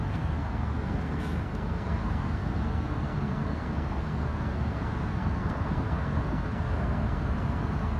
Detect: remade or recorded remade